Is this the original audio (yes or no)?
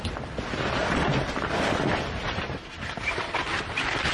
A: yes